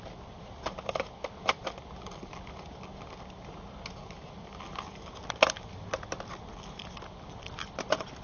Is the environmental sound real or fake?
real